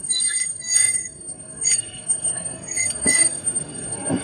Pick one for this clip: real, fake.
fake